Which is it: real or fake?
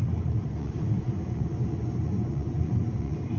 fake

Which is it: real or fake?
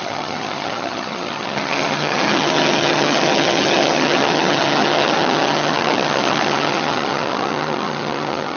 fake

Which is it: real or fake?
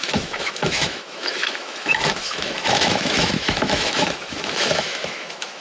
fake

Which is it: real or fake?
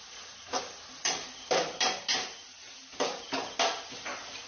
real